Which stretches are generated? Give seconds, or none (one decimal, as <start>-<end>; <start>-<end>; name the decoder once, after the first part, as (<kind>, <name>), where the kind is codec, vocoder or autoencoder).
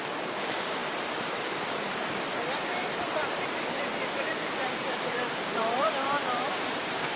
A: 0.0-7.2 (vocoder, BigVGAN v2)